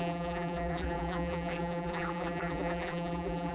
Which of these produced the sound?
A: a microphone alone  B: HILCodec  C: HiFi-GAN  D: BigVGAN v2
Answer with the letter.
D